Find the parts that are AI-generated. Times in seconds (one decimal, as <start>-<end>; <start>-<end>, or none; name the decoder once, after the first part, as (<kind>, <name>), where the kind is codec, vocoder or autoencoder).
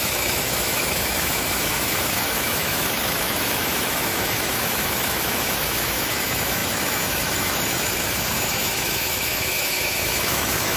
0.0-10.8 (autoencoder, DAC-VAE)